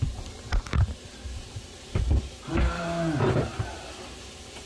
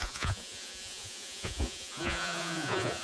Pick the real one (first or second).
first